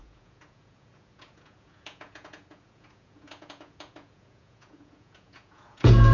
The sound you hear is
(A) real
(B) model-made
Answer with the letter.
B